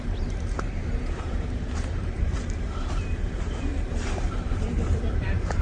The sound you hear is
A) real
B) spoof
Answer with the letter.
B